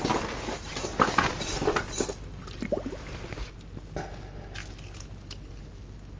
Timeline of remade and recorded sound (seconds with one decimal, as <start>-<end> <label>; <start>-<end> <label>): 0.0-6.2 recorded